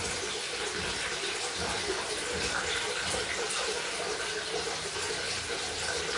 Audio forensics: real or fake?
real